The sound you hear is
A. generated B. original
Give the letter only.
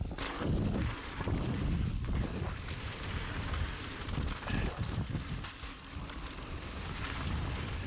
B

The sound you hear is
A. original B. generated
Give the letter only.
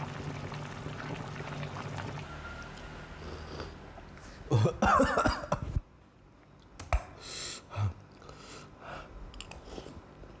A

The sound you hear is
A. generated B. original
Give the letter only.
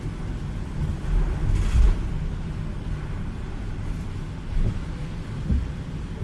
B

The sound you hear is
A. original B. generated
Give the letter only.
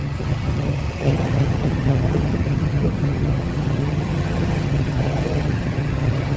B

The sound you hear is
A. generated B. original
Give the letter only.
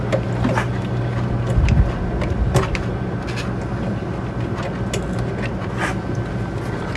B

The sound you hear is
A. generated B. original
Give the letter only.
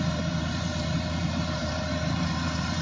A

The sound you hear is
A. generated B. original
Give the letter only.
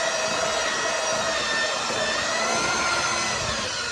B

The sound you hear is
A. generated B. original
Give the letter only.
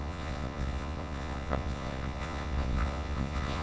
A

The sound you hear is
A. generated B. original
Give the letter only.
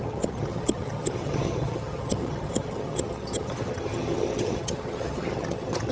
A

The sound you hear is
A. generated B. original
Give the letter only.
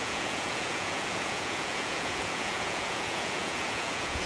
A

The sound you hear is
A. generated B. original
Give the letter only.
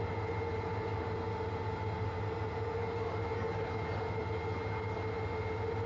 B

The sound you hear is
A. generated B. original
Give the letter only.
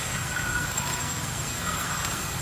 A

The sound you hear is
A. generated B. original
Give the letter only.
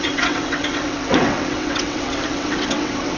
A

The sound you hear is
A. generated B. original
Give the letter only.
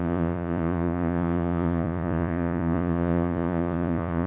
A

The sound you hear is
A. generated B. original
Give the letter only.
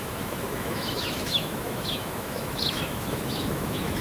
A